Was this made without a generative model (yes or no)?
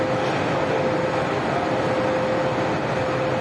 yes